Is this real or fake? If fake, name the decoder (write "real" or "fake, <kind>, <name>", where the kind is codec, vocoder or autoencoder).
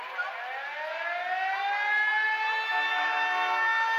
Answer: real